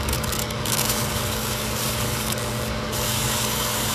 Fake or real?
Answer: fake